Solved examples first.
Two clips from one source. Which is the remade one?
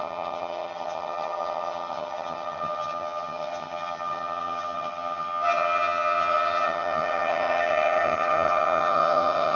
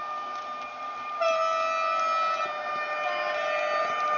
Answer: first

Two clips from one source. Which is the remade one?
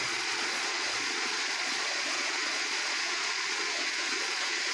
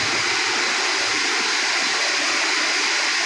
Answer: first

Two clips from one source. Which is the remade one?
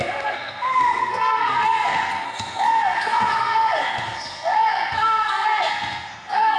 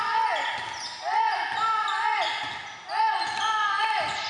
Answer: first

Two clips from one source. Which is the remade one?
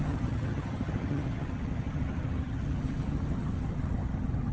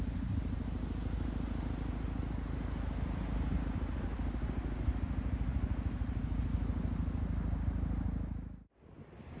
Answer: first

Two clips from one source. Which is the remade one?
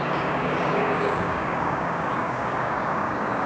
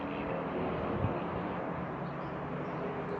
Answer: first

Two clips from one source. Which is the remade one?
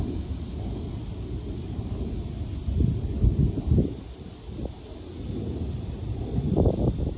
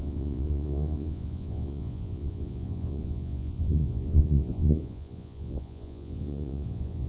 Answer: second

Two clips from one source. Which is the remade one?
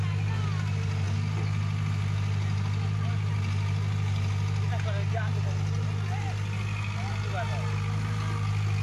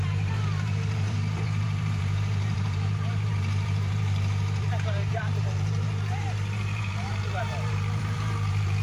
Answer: second